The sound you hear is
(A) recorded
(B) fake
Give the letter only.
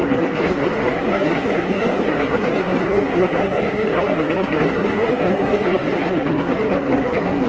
B